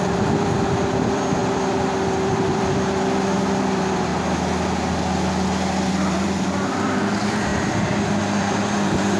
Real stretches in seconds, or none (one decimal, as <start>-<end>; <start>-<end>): 4.1-5.9